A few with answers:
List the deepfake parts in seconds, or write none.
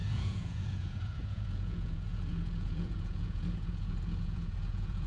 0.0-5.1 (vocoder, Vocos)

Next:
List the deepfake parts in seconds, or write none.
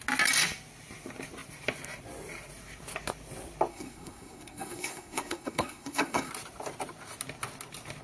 3.7-6.3 (codec, SNAC)